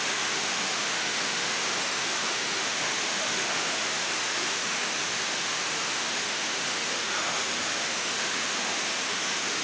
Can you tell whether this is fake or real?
fake